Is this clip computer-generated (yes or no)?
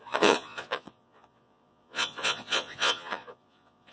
yes